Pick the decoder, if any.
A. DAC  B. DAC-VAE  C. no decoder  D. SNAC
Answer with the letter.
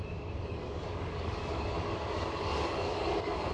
A